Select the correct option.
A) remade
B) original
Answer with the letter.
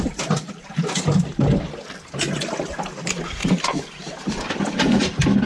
B